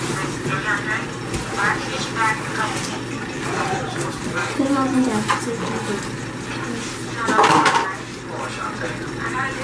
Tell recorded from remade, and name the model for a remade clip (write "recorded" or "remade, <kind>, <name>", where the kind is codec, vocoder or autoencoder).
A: recorded